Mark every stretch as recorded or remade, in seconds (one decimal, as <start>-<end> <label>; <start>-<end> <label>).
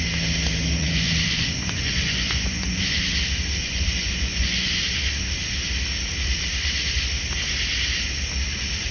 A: 0.0-0.8 recorded; 0.8-3.0 remade; 3.0-3.6 recorded; 3.6-4.7 remade; 4.7-8.9 recorded